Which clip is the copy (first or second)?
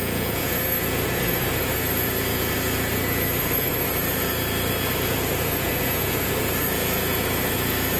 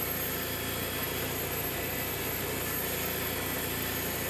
first